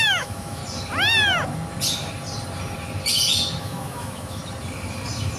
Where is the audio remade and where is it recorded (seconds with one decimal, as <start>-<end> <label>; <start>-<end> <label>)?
0.0-0.6 remade; 0.6-3.6 recorded; 3.6-4.4 remade; 4.4-5.4 recorded